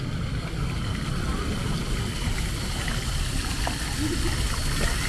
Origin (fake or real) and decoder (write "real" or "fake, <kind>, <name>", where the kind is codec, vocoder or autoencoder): real